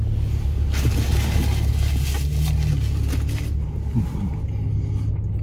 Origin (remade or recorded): recorded